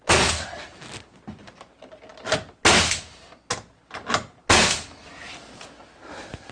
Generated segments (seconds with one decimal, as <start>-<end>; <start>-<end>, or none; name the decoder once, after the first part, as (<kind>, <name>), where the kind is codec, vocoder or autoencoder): none